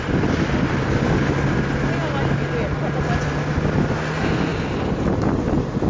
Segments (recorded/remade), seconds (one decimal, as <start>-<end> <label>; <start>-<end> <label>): 0.0-5.9 recorded